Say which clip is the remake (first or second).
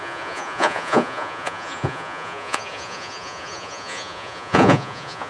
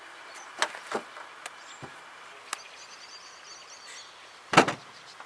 first